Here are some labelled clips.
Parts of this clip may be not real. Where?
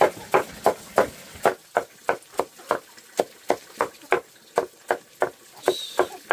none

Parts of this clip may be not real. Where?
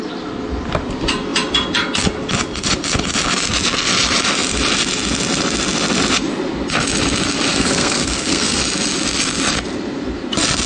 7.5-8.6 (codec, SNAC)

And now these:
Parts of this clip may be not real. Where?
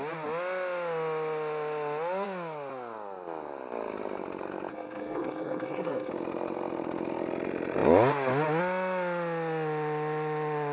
4.7-6.1 (codec, SNAC)